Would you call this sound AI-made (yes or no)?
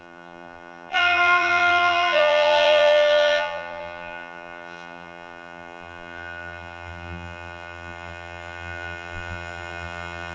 yes